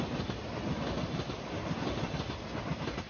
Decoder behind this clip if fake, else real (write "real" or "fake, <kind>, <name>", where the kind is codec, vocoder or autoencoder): real